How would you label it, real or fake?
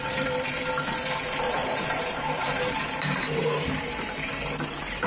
fake